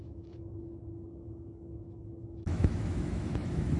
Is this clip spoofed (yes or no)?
yes